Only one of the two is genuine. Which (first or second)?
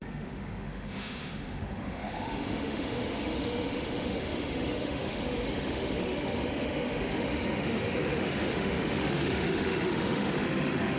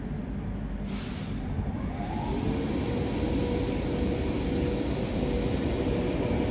second